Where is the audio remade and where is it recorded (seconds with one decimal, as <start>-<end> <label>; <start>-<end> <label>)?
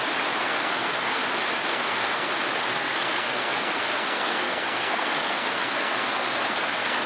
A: 0.0-0.4 recorded; 0.4-1.2 remade; 1.2-1.7 recorded; 1.7-2.3 remade; 2.3-2.7 recorded; 2.7-7.1 remade